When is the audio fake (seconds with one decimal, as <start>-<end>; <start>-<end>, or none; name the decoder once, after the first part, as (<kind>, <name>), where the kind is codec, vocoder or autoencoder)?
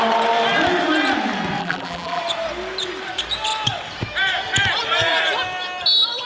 1.6-2.2 (vocoder, BigVGAN v2)